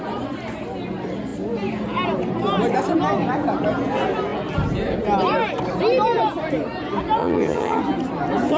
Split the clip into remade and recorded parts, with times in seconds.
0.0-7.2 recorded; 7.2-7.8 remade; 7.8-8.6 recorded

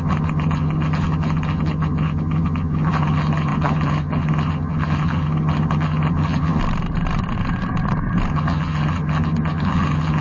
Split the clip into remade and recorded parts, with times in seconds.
0.0-6.6 remade; 6.6-8.3 recorded; 8.3-10.2 remade

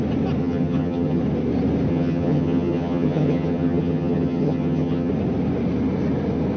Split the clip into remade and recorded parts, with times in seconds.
0.0-0.4 recorded; 0.4-1.2 remade; 1.2-1.9 recorded; 1.9-5.1 remade; 5.1-6.6 recorded